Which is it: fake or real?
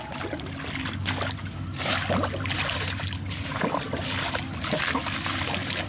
real